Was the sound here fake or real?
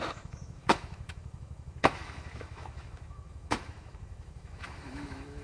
fake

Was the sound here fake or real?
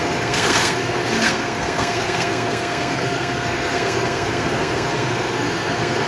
fake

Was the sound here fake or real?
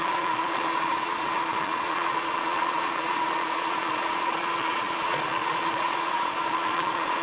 fake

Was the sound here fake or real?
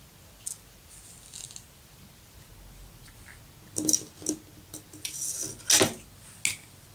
real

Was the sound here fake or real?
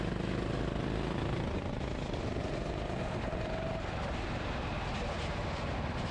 real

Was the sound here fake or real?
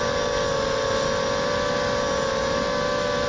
real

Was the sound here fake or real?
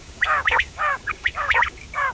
fake